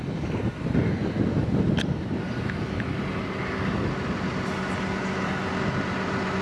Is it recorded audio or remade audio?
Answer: recorded